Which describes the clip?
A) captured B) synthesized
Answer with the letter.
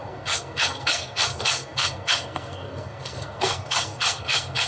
B